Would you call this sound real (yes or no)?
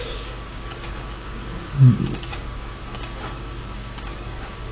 no